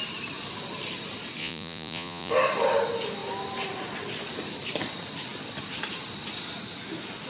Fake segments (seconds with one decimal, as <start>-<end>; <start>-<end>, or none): 1.4-2.3